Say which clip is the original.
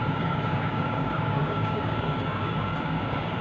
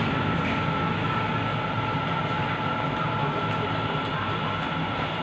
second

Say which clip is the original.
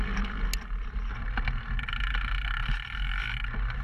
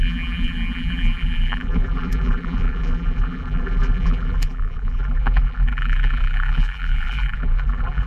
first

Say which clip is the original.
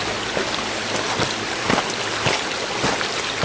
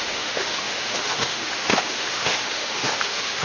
first